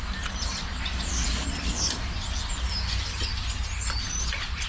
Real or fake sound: real